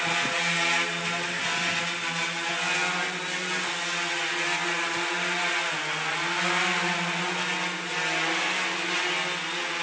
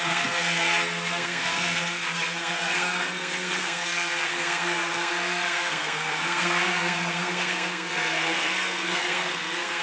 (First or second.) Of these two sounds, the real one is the first